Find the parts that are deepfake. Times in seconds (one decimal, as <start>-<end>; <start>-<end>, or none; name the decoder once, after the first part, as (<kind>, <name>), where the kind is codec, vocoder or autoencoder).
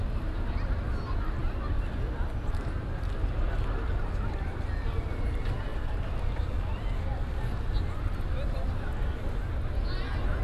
none